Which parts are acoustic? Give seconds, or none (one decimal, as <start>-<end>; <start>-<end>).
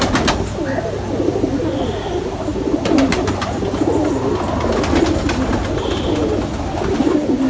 0.0-7.5